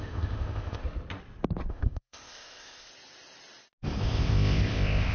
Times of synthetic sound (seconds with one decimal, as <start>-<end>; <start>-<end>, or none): 0.0-0.8; 1.7-2.9; 4.0-5.1